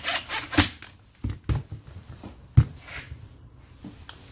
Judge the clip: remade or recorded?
recorded